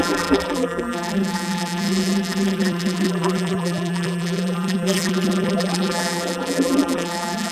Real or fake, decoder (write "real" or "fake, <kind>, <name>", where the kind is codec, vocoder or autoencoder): fake, vocoder, BigVGAN v2